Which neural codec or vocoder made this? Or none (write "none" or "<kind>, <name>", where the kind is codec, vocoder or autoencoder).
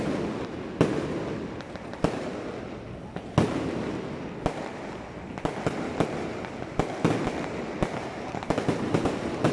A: none